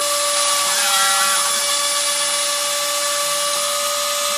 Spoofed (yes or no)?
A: no